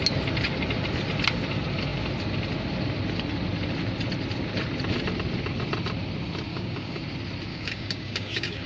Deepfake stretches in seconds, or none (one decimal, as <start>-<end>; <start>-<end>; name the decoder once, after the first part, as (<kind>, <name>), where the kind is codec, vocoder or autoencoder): 6.5-7.0 (codec, DAC); 7.5-8.7